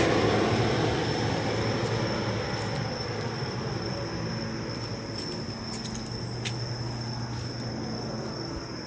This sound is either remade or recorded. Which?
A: recorded